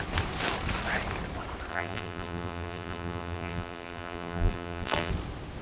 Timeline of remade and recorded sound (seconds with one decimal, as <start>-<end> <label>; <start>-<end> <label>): 0.0-1.7 recorded; 1.7-5.1 remade; 5.1-5.6 recorded